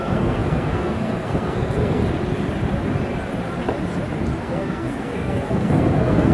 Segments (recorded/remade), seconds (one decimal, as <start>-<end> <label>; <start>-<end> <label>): 0.0-2.0 remade; 2.0-4.4 recorded; 4.4-6.3 remade